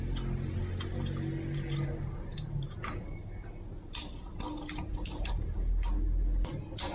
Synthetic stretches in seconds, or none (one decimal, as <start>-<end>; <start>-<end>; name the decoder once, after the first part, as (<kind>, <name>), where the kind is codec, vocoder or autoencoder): none